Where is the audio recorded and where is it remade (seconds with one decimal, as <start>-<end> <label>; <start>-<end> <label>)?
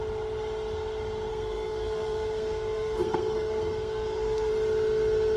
0.0-1.3 recorded; 1.3-4.5 remade; 4.5-5.4 recorded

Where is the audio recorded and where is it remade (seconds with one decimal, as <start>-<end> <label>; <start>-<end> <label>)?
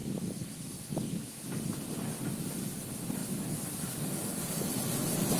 0.0-1.4 remade; 1.4-3.2 recorded; 3.2-4.0 remade; 4.0-5.4 recorded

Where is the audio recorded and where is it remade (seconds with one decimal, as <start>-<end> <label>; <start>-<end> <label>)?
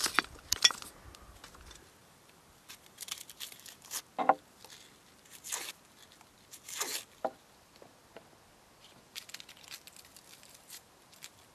0.0-2.0 recorded; 2.0-4.0 remade; 4.0-11.5 recorded